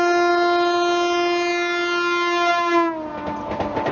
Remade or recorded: recorded